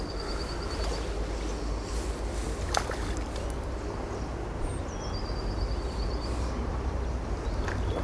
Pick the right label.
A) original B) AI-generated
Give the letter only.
A